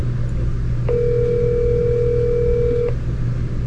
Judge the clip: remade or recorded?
recorded